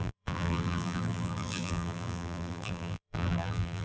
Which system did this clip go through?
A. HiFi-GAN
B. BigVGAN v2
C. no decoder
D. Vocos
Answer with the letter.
B